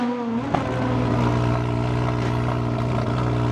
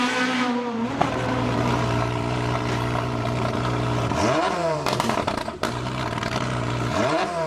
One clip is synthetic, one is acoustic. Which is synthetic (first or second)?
second